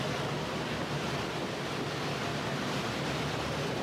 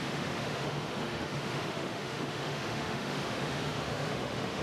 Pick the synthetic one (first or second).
second